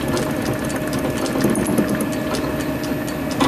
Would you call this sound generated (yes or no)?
no